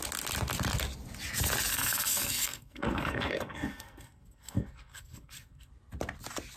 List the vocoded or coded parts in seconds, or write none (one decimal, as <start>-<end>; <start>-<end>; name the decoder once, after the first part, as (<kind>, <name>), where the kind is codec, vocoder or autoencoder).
1.7-5.7 (codec, SNAC)